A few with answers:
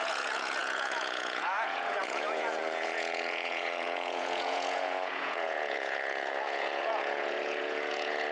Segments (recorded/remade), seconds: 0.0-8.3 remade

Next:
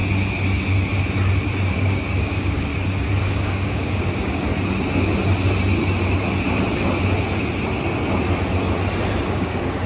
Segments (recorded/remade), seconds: 0.0-1.7 recorded; 1.7-2.7 remade; 2.7-3.2 recorded; 3.2-4.5 remade; 4.5-9.3 recorded; 9.3-9.9 remade

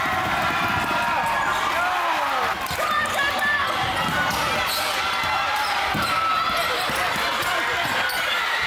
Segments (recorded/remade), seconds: 0.0-8.7 recorded

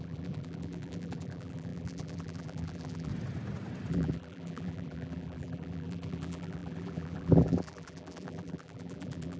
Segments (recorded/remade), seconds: 0.0-3.1 remade; 3.1-3.9 recorded; 3.9-9.4 remade